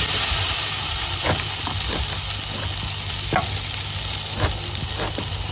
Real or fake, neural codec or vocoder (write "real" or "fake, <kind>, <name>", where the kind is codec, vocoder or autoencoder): real